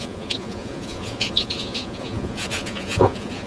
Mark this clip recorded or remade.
remade